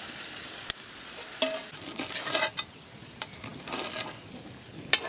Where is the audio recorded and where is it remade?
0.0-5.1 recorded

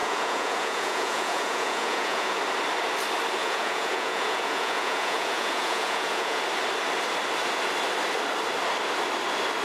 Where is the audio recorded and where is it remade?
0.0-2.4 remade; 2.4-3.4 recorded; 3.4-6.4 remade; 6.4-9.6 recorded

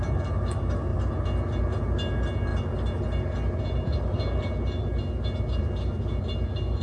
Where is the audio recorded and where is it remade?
0.0-6.8 recorded